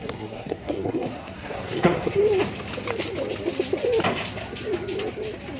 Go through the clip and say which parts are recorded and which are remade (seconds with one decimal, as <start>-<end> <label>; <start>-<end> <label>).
0.0-2.2 remade; 2.2-5.6 recorded